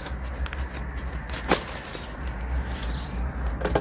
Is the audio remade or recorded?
recorded